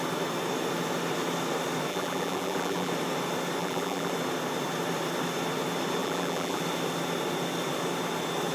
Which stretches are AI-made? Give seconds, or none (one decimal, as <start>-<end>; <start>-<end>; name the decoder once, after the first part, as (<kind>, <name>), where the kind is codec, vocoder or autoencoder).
1.9-2.9 (vocoder, BigVGAN v2); 3.6-4.1; 6.0-6.6